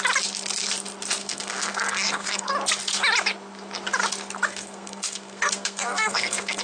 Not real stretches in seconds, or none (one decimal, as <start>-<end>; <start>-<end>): 1.2-2.5; 4.5-6.6